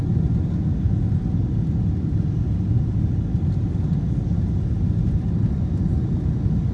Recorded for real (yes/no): yes